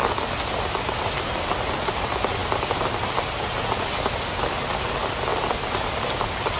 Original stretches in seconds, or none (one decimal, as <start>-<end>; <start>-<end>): 0.0-6.6